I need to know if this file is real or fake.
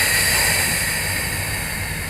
real